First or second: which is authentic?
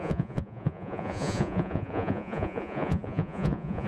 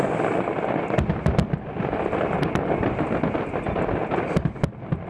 second